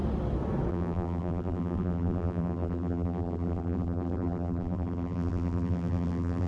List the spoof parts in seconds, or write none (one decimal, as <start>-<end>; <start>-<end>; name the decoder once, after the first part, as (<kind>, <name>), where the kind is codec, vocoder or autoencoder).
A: 0.7-6.5 (vocoder, BigVGAN v2)